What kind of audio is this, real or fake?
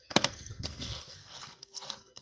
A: fake